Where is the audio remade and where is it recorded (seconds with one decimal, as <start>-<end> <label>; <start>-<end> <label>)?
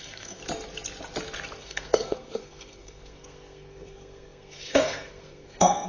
0.0-0.4 remade; 0.4-1.6 recorded; 1.6-5.9 remade